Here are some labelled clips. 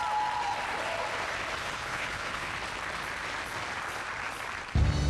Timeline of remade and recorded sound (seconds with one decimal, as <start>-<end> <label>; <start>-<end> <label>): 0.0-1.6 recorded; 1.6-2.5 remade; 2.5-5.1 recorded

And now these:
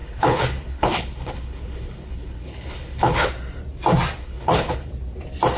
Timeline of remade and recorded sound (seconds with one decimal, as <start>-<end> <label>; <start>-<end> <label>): 0.0-3.3 remade; 3.3-4.2 recorded; 4.2-4.9 remade; 4.9-5.6 recorded

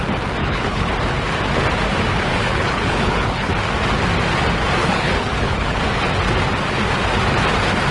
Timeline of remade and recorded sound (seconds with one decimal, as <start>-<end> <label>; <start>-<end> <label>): 0.0-0.4 recorded; 0.4-0.9 remade; 0.9-2.3 recorded; 2.3-3.5 remade; 3.5-4.8 recorded; 4.8-5.8 remade; 5.8-7.9 recorded

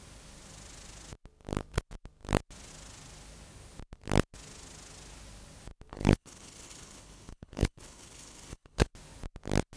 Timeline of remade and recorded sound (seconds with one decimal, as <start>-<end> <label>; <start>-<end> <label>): 0.0-5.9 recorded; 5.9-8.9 remade; 8.9-9.8 recorded

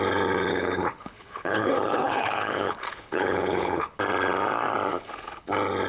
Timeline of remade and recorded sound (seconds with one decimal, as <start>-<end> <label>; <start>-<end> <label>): 0.0-0.5 recorded; 0.5-4.0 remade; 4.0-4.9 recorded; 4.9-5.5 remade; 5.5-5.9 recorded